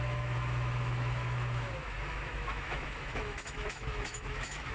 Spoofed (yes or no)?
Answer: yes